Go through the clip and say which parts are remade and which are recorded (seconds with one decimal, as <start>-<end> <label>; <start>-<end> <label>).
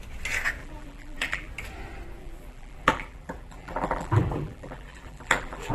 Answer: 0.0-0.6 recorded; 0.6-1.5 remade; 1.5-2.2 recorded; 2.2-5.7 remade